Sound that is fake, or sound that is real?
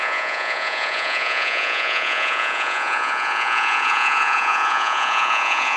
fake